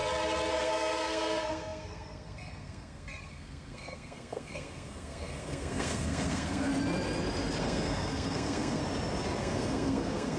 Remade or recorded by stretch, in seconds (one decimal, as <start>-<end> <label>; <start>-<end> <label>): 0.0-0.5 recorded; 0.5-6.7 remade; 6.7-7.6 recorded; 7.6-8.8 remade; 8.8-9.4 recorded; 9.4-10.4 remade